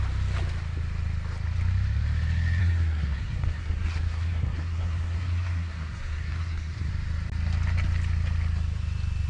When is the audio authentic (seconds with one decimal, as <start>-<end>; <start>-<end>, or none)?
0.0-2.6; 6.9-9.3